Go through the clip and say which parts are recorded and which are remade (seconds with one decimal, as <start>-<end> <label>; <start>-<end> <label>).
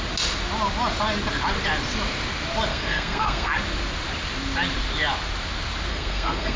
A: 0.0-2.7 recorded; 2.7-3.5 remade; 3.5-5.9 recorded; 5.9-6.6 remade